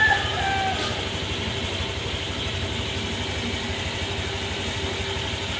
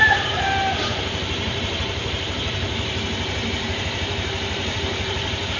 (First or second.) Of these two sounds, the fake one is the second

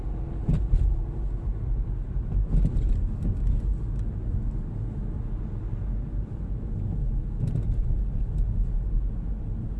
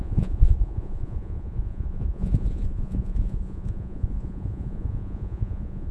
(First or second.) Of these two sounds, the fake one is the second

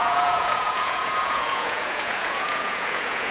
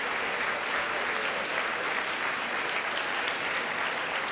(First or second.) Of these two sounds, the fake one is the first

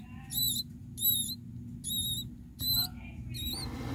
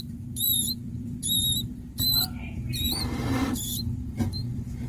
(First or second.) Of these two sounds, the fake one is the second